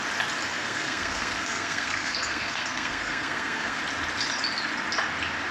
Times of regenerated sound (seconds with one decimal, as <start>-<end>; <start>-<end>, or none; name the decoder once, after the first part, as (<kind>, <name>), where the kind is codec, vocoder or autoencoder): 0.5-3.8 (codec, SNAC)